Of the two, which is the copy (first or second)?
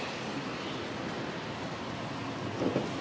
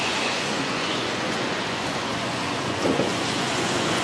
second